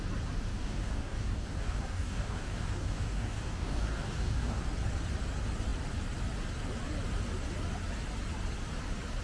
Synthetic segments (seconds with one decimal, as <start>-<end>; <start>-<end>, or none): 0.5-4.6